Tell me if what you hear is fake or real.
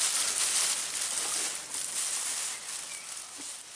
real